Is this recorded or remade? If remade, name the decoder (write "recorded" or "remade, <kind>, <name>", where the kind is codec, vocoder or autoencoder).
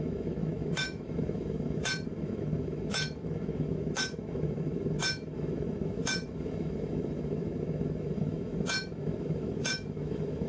remade, autoencoder, DAC-VAE